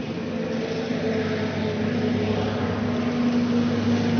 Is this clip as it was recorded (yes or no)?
yes